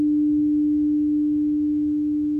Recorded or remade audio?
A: remade